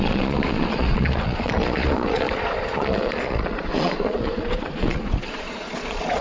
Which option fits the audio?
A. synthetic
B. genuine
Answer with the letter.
A